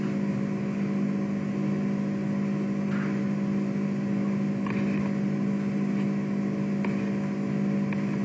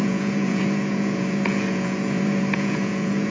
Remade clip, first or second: second